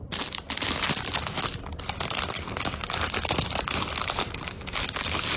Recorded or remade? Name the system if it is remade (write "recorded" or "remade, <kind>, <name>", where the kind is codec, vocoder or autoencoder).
recorded